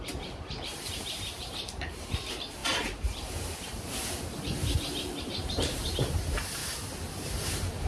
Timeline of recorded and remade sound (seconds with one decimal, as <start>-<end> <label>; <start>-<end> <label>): 0.0-6.6 remade; 6.6-7.1 recorded; 7.1-7.9 remade